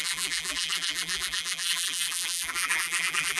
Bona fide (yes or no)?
no